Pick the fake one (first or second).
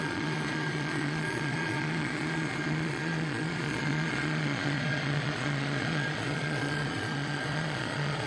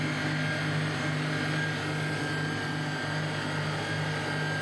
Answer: first